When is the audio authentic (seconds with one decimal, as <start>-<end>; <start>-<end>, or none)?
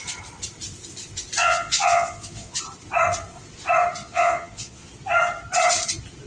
0.0-1.4; 2.6-4.0; 4.9-6.3